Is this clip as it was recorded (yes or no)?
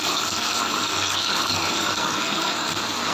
no